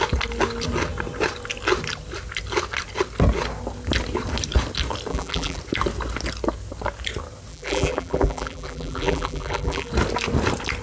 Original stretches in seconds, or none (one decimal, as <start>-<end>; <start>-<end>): 0.0-5.1; 5.6-7.5; 9.9-10.8